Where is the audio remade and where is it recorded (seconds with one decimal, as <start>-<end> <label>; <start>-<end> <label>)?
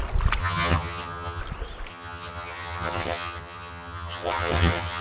0.0-0.4 recorded; 0.4-1.4 remade; 1.4-1.9 recorded; 1.9-5.0 remade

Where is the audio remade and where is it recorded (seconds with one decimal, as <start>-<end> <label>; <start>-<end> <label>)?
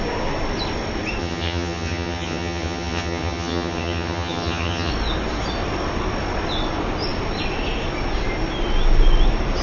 0.0-1.2 recorded; 1.2-4.9 remade; 4.9-9.6 recorded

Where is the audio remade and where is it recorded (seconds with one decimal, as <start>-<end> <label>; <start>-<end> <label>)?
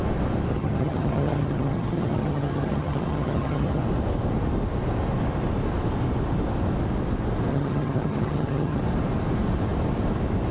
0.0-0.5 recorded; 0.5-3.8 remade; 3.8-7.5 recorded; 7.5-8.8 remade; 8.8-10.5 recorded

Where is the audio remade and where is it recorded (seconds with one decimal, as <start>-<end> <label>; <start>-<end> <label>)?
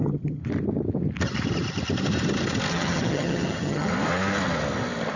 0.0-0.4 remade; 0.4-2.7 recorded; 2.7-3.9 remade; 3.9-5.2 recorded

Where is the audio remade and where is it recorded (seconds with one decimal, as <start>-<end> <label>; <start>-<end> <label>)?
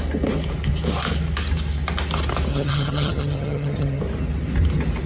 0.0-2.5 recorded; 2.5-4.0 remade; 4.0-5.1 recorded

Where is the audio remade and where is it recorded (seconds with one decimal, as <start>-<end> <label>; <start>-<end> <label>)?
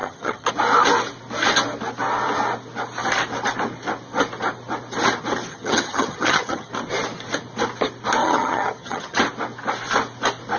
0.0-0.5 remade; 0.5-5.5 recorded; 5.5-6.7 remade; 6.7-8.2 recorded; 8.2-9.2 remade; 9.2-10.6 recorded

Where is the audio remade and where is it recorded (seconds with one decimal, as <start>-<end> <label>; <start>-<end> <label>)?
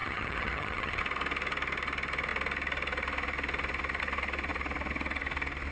0.0-1.0 remade; 1.0-5.7 recorded